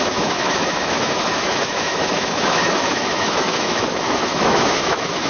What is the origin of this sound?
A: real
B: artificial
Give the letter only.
B